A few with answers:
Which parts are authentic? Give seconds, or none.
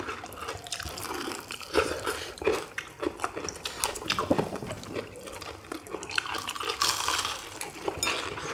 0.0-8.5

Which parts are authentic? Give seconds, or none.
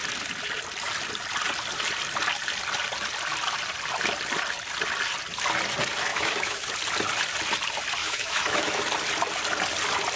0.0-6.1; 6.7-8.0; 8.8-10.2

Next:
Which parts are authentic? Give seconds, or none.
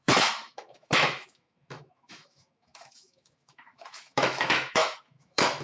none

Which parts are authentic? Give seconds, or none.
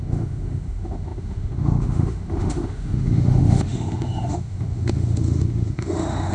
none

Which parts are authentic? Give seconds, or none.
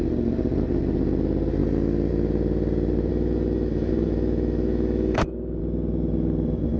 0.0-3.1; 5.6-6.8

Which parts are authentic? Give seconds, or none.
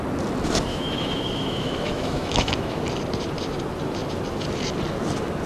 0.0-0.7; 2.8-5.5